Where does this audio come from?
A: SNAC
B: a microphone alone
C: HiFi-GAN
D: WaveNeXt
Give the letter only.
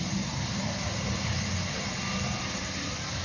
B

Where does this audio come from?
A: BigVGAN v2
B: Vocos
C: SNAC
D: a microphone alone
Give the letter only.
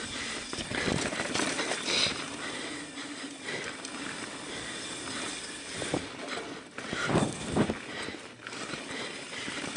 D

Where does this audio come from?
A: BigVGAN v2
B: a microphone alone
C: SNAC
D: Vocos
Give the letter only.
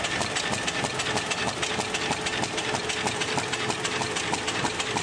B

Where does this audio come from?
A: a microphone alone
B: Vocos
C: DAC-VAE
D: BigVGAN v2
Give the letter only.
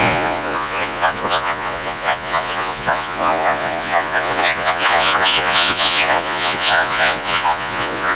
B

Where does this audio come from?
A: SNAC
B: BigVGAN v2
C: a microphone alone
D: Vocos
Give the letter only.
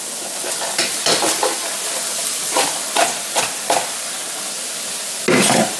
C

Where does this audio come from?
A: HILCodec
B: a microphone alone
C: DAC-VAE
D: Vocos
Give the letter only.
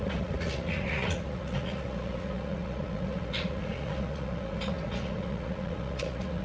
D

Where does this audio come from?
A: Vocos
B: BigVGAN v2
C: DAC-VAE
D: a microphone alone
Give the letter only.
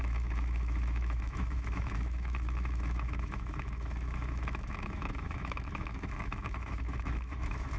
C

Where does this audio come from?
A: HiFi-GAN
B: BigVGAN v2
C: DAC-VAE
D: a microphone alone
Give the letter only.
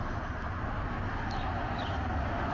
D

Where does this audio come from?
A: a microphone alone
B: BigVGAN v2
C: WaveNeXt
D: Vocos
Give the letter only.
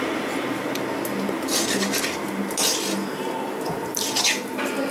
A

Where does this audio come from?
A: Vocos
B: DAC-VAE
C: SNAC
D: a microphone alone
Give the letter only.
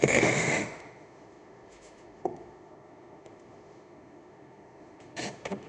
B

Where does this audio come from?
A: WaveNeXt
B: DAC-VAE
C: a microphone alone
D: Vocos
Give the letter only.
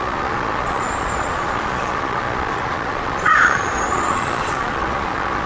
D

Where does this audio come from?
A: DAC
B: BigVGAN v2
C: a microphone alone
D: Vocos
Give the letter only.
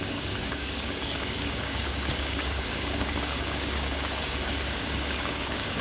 A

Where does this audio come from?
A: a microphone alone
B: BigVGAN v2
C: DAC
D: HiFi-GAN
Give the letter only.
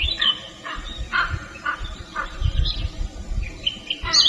A